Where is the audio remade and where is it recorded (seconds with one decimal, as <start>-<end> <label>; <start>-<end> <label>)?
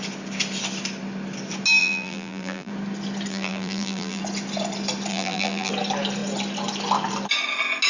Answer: 0.0-1.8 recorded; 1.8-2.7 remade; 2.7-3.3 recorded; 3.3-4.2 remade; 4.2-5.1 recorded; 5.1-5.7 remade; 5.7-7.9 recorded